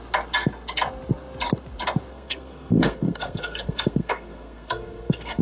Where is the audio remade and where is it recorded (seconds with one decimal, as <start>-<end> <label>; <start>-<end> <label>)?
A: 0.0-2.1 recorded; 2.1-5.4 remade